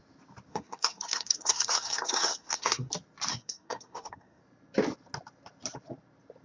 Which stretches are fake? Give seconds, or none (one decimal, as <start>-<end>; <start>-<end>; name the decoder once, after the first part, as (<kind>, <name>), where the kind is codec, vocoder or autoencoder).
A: 0.5-2.9 (codec, SNAC); 3.3-4.4